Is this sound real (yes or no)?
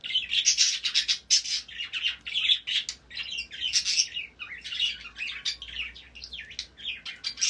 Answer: yes